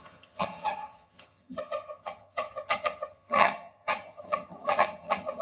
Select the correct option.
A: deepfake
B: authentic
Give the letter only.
A